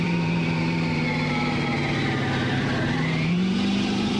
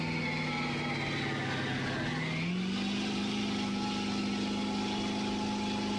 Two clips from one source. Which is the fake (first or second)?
first